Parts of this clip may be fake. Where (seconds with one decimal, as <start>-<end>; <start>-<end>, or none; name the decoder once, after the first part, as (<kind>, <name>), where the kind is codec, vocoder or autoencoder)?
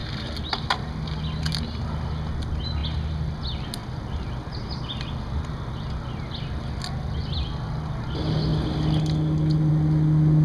none